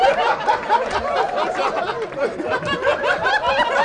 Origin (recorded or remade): recorded